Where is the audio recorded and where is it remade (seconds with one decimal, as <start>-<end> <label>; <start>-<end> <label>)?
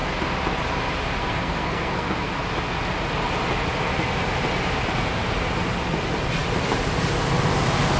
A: 0.0-1.2 recorded; 1.2-2.3 remade; 2.3-8.0 recorded